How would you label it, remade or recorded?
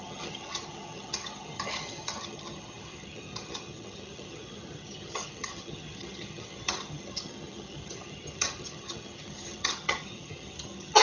remade